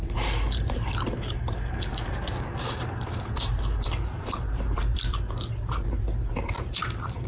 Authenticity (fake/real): fake